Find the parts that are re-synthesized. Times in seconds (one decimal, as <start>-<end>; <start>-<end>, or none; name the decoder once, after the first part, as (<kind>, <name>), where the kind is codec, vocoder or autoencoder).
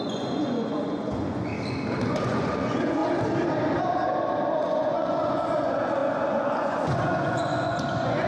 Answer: 0.0-1.5 (vocoder, Vocos); 2.1-3.0; 4.6-8.3